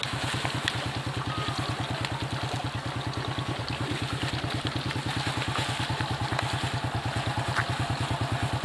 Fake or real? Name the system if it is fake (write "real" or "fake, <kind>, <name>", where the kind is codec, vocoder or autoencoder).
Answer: real